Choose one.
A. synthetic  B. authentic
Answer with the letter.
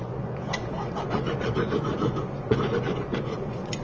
A